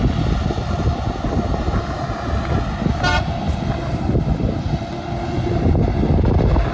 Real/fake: real